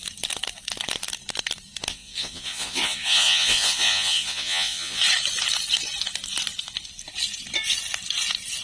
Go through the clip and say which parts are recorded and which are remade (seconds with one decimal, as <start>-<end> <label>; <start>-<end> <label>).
0.0-1.9 recorded; 1.9-5.0 remade; 5.0-8.6 recorded